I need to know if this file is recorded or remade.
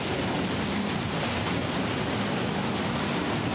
recorded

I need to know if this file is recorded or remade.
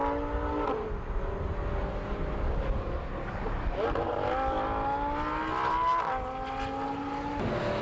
recorded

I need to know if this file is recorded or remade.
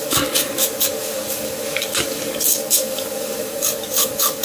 remade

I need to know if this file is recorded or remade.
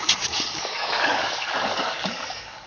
remade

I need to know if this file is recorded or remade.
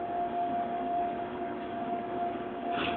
remade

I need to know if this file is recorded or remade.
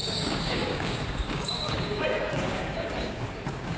remade